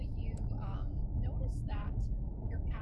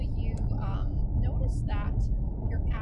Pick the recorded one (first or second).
second